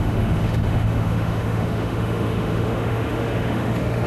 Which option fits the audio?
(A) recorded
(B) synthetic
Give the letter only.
B